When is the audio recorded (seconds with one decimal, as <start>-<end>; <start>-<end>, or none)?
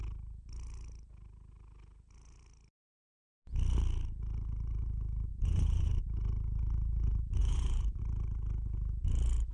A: 0.0-5.3; 6.0-7.4; 8.0-9.5